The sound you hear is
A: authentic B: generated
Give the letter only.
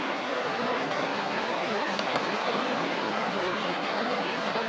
B